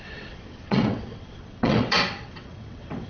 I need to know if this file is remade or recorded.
remade